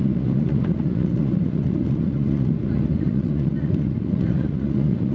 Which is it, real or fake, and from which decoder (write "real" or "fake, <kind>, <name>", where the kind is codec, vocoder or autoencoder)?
fake, vocoder, Vocos